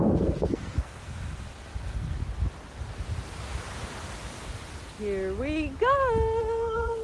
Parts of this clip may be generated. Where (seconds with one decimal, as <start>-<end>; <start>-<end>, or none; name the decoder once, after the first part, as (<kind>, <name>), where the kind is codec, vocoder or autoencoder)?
0.0-2.2 (codec, SNAC); 6.4-7.0